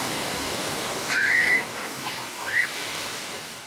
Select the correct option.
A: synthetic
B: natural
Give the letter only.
A